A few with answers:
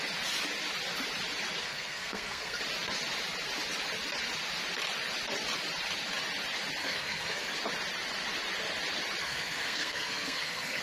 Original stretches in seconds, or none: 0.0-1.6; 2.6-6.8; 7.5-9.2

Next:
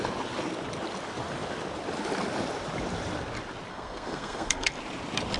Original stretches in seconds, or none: 0.0-3.7; 4.7-5.4

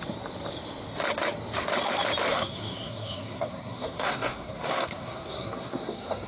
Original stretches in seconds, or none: 0.0-2.3

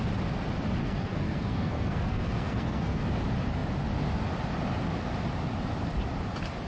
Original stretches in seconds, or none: 0.0-0.8; 3.0-6.7

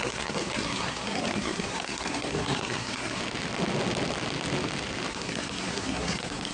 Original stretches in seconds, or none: 3.2-5.1